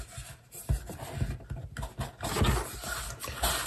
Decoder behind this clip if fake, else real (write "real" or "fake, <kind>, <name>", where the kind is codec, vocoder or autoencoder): real